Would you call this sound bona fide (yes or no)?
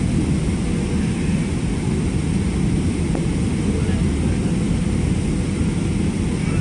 yes